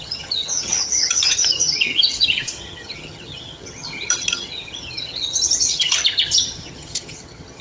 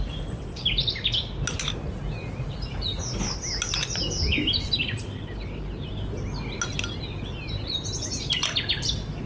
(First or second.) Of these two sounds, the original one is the second